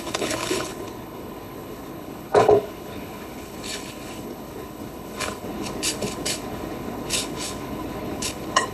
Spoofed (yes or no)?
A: yes